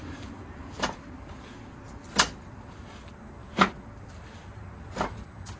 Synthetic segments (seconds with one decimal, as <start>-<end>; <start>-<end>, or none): 0.0-2.8